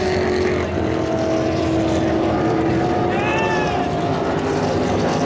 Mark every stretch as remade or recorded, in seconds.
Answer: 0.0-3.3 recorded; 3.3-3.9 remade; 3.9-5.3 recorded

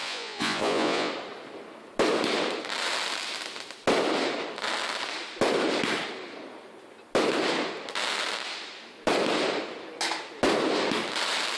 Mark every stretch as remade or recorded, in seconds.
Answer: 0.0-1.1 remade; 1.1-11.6 recorded

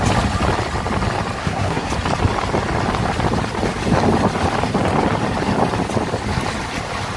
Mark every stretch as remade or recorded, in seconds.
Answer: 0.0-1.4 recorded; 1.4-1.9 remade; 1.9-7.2 recorded

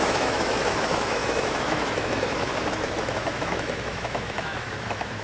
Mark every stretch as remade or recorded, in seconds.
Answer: 0.0-5.2 remade

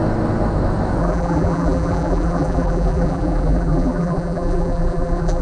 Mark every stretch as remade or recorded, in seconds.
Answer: 0.0-1.0 recorded; 1.0-5.4 remade

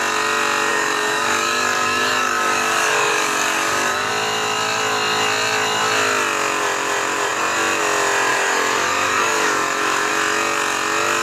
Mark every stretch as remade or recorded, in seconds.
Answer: 0.0-0.7 recorded; 0.7-4.1 remade; 4.1-8.3 recorded; 8.3-10.1 remade; 10.1-11.2 recorded